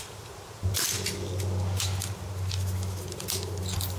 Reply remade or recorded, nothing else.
recorded